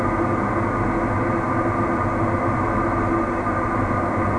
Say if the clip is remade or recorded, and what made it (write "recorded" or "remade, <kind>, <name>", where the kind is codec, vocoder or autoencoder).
recorded